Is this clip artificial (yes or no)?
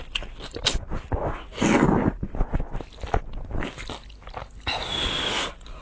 no